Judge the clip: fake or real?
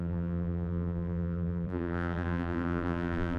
fake